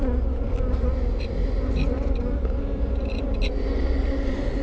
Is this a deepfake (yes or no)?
no